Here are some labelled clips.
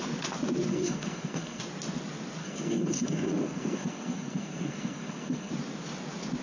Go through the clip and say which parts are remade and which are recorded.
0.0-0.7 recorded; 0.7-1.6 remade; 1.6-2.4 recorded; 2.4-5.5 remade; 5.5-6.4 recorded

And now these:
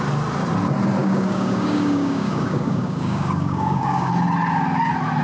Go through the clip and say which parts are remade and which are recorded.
0.0-1.0 recorded; 1.0-4.1 remade; 4.1-5.2 recorded

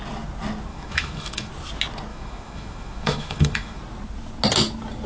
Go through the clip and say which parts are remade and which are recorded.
0.0-0.7 recorded; 0.7-1.5 remade; 1.5-2.1 recorded; 2.1-3.8 remade; 3.8-5.1 recorded

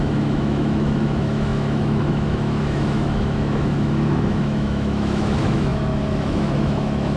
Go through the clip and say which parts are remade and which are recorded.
0.0-7.2 remade

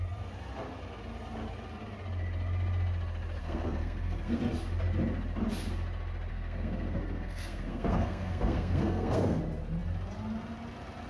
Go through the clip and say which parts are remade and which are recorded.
0.0-3.4 recorded; 3.4-4.4 remade; 4.4-6.3 recorded; 6.3-9.4 remade; 9.4-11.1 recorded

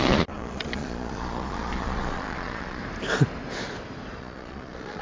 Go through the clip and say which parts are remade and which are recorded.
0.0-2.8 remade; 2.8-4.2 recorded; 4.2-5.0 remade

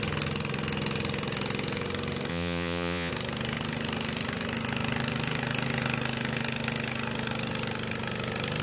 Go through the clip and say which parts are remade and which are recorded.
0.0-2.3 recorded; 2.3-3.1 remade; 3.1-8.6 recorded

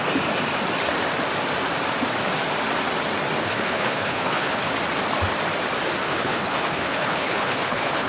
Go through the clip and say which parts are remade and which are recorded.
0.0-3.4 recorded; 3.4-4.7 remade; 4.7-6.0 recorded; 6.0-8.1 remade